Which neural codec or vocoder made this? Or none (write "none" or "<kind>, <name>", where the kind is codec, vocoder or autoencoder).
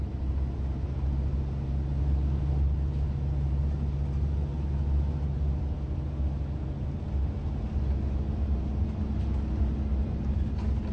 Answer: none